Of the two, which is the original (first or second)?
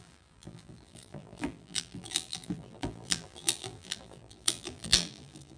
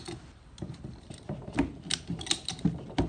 second